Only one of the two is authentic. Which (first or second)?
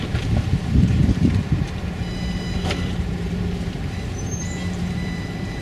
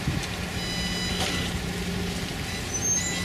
second